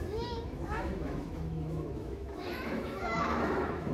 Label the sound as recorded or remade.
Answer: remade